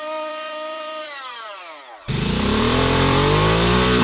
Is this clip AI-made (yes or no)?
yes